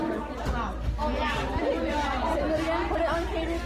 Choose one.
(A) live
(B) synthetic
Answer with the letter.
A